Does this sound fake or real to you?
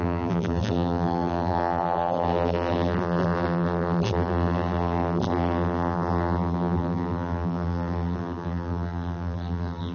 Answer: fake